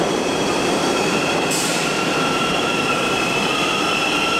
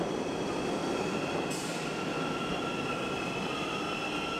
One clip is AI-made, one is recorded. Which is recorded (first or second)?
second